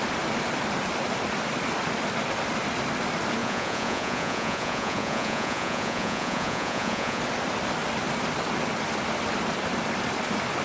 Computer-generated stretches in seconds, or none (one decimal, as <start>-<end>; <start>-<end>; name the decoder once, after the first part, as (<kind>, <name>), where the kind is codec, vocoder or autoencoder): 3.4-7.2 (vocoder, Vocos)